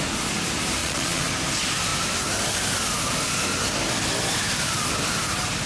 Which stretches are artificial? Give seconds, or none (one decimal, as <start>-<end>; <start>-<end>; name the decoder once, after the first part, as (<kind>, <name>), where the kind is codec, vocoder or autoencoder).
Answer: 0.8-1.3 (vocoder, Vocos)